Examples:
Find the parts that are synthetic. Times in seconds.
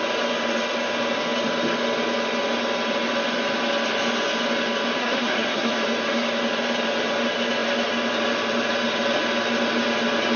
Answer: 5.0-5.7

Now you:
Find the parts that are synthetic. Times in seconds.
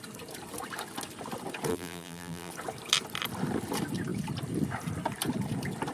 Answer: 1.7-2.5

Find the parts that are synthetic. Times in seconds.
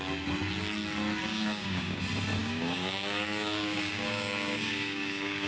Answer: 1.3-2.0; 2.4-5.5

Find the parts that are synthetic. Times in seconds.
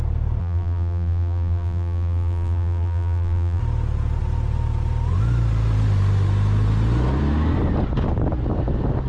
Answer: 0.4-3.6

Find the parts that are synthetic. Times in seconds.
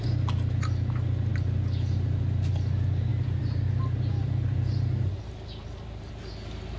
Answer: 3.1-6.1